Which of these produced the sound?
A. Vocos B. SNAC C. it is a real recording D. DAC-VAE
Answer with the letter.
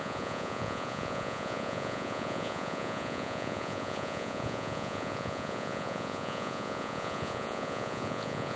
A